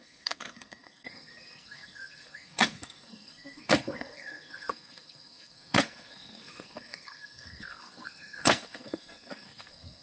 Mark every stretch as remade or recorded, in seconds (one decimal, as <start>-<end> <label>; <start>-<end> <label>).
0.0-10.0 remade